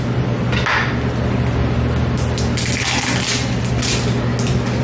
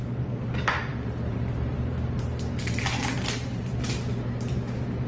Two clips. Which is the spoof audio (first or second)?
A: second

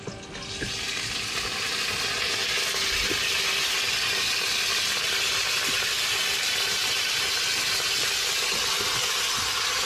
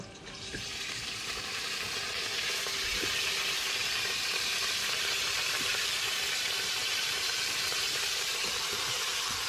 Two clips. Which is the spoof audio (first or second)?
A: second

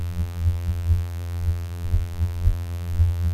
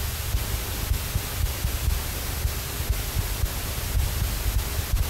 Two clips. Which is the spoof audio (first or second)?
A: first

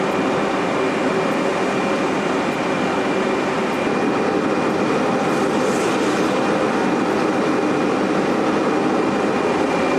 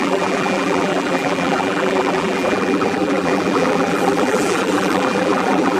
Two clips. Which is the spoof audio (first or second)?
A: second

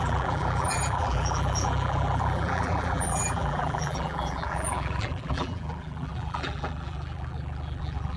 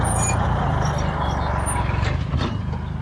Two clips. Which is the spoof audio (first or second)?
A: first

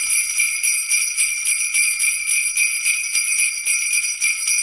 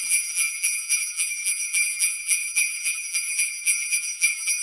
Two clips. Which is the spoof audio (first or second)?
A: second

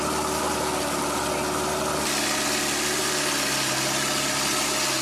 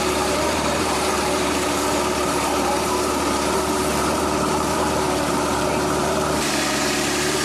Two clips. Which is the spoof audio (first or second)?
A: second